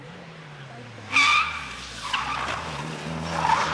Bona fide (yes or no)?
yes